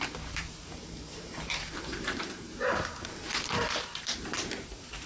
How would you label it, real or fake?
fake